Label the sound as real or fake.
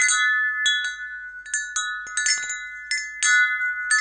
real